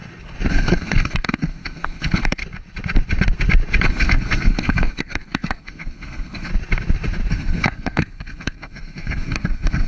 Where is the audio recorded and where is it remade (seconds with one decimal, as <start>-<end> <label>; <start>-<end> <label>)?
0.0-0.5 recorded; 0.5-2.4 remade; 2.4-3.9 recorded; 3.9-6.5 remade; 6.5-7.3 recorded; 7.3-9.9 remade